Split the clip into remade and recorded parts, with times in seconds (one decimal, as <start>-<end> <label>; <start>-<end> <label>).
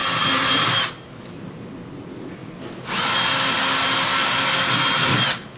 0.0-5.6 recorded